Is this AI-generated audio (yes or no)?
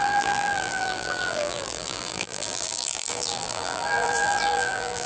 yes